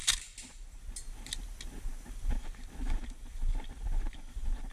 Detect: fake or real real